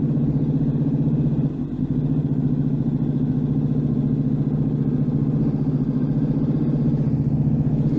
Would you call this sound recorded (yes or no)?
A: yes